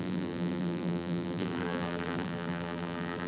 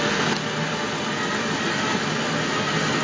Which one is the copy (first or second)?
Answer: first